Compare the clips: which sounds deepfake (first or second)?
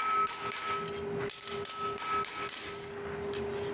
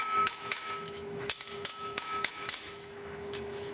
second